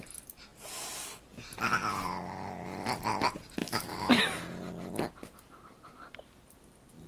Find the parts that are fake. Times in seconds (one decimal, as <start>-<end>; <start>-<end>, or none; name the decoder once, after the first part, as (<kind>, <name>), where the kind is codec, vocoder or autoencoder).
3.6-4.2 (autoencoder, DAC-VAE)

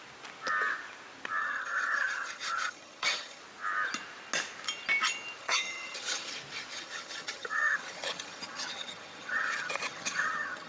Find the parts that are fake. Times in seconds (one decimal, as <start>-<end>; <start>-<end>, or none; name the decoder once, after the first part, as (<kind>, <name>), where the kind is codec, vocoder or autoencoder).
1.4-3.4 (vocoder, HiFi-GAN); 5.4-6.3; 6.7-10.7

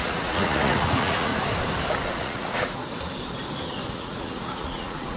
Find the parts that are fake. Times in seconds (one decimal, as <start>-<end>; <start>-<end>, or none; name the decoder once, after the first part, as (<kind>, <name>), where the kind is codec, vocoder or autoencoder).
0.0-1.3 (vocoder, Vocos); 2.1-2.8; 3.9-5.2

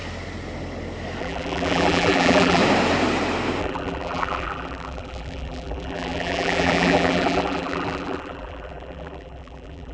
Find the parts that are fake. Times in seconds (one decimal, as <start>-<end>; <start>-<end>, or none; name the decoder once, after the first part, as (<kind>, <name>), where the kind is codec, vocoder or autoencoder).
1.2-2.6 (vocoder, BigVGAN v2); 3.6-9.9

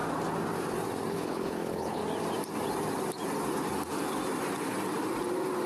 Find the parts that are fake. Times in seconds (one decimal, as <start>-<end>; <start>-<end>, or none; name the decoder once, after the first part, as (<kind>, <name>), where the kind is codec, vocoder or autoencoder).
1.1-2.0 (codec, HILCodec)

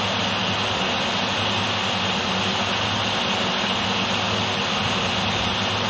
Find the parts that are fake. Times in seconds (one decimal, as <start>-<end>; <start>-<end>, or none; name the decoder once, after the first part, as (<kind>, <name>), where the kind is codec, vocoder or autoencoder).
none

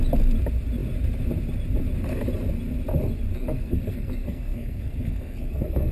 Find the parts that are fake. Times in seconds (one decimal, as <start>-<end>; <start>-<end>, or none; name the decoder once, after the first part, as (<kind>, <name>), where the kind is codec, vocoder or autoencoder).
3.3-5.9 (codec, SNAC)

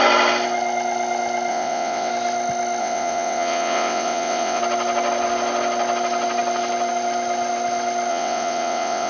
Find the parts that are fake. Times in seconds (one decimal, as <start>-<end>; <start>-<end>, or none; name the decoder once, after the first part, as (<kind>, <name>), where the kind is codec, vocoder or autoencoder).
1.5-2.1 (vocoder, WaveNeXt); 2.8-4.6; 8.1-9.1